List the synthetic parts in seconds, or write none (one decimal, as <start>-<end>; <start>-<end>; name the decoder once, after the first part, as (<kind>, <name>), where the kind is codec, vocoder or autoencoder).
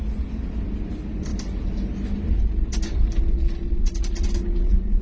none